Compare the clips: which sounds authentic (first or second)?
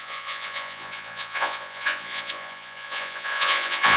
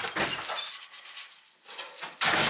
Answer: second